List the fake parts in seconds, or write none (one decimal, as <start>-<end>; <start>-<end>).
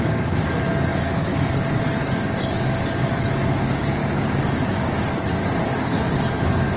0.0-6.8